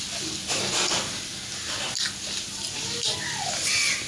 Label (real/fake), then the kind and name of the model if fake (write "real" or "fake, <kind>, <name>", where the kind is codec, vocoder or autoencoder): real